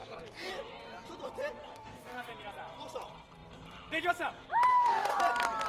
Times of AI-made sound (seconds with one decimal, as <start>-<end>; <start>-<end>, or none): 0.0-0.5; 1.7-2.3; 4.7-5.2